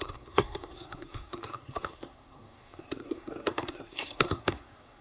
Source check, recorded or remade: remade